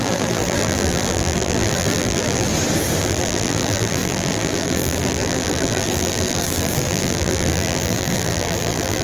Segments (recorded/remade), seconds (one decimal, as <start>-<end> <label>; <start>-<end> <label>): 0.0-2.5 remade; 2.5-3.0 recorded; 3.0-9.0 remade